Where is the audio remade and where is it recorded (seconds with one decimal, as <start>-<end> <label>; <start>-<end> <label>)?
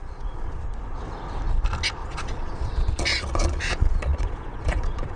0.0-0.6 remade; 0.6-2.0 recorded; 2.0-5.2 remade